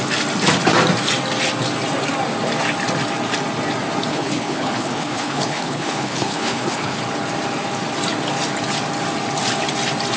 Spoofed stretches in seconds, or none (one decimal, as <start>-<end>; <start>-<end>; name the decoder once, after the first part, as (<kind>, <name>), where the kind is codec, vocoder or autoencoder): 4.1-7.0 (codec, HILCodec)